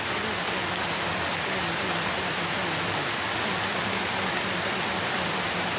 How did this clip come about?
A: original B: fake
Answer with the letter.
A